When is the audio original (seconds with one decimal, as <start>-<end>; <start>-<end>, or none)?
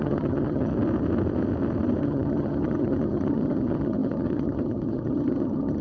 0.7-2.0